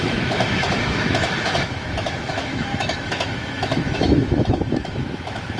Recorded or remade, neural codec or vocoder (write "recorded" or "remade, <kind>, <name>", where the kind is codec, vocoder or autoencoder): remade, autoencoder, DAC-VAE